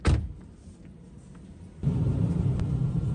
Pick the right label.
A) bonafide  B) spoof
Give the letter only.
A